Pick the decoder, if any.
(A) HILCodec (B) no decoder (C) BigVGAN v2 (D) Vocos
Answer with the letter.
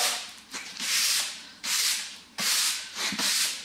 C